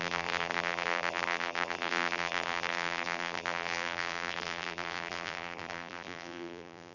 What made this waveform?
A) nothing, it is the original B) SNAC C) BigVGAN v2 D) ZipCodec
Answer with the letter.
C